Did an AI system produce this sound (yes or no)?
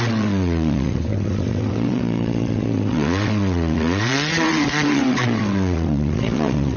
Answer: yes